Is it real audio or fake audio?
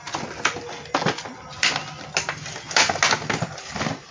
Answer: real